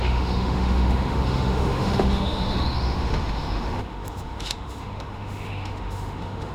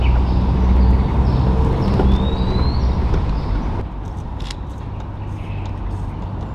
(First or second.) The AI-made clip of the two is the first